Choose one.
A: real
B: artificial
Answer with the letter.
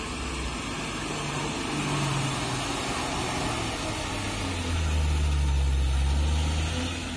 A